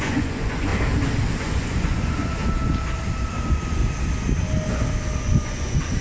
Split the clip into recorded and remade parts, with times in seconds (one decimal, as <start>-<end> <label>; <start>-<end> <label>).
0.0-0.7 remade; 0.7-1.4 recorded; 1.4-2.4 remade; 2.4-3.3 recorded; 3.3-3.8 remade; 3.8-5.2 recorded; 5.2-6.0 remade